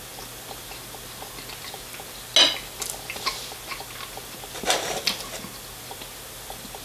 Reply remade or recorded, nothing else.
recorded